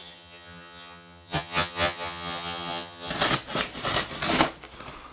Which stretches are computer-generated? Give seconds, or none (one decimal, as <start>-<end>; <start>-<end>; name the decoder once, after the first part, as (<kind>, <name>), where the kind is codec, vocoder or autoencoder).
0.0-3.1 (vocoder, HiFi-GAN)